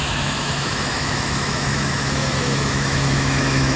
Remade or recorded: remade